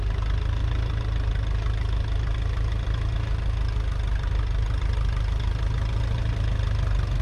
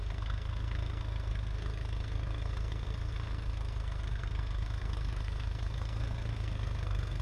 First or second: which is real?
first